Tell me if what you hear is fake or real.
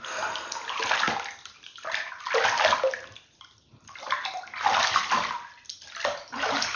real